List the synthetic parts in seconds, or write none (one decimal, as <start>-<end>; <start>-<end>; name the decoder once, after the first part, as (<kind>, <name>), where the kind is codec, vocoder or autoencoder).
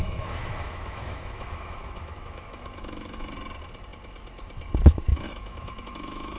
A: 0.0-3.3 (autoencoder, DAC-VAE); 5.1-6.4